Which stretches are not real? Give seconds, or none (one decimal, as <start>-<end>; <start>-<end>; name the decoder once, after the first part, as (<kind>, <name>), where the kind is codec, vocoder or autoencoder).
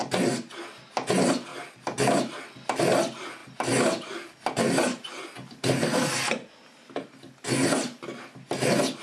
0.0-0.6 (vocoder, BigVGAN v2); 1.5-2.3